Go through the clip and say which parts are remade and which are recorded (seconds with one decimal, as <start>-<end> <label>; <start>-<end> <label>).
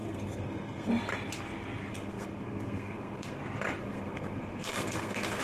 0.0-0.9 remade; 0.9-1.9 recorded; 1.9-3.4 remade; 3.4-3.8 recorded; 3.8-5.4 remade